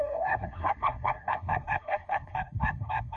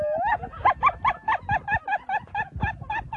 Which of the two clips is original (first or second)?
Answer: second